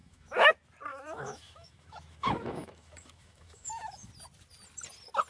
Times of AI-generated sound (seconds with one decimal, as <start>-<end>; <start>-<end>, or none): 0.0-0.5; 0.9-4.1